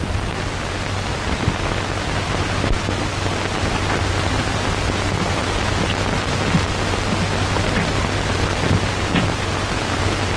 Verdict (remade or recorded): recorded